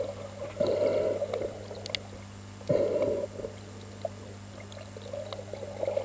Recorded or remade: recorded